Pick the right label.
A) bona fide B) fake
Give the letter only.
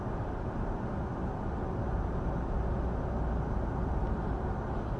A